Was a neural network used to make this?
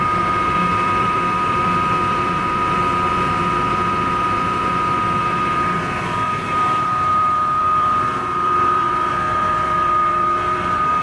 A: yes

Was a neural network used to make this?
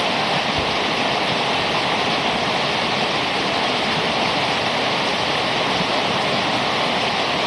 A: no